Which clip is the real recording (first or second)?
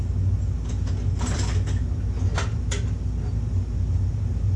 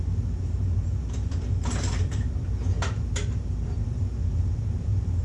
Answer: first